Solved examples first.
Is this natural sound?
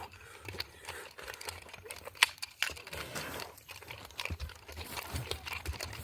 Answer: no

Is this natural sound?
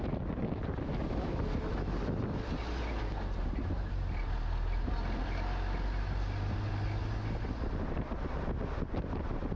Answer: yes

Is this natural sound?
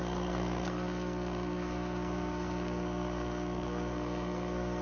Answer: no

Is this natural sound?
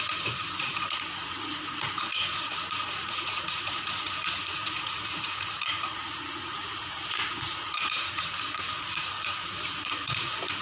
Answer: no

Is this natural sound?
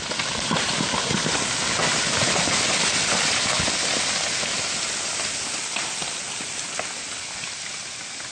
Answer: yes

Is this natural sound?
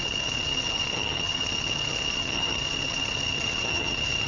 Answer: no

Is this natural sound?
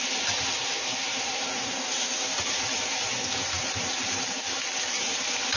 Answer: yes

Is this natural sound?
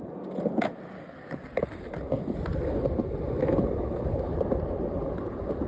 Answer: yes